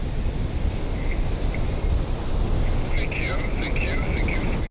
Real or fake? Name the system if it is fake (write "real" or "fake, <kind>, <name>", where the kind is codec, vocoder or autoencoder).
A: real